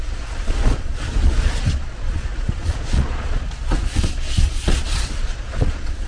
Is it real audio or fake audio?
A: fake